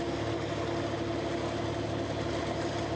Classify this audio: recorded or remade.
recorded